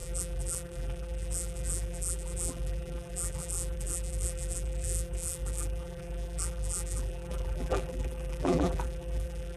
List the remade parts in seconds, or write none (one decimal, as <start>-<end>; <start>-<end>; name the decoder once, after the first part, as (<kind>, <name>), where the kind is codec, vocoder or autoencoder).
0.0-9.6 (vocoder, BigVGAN v2)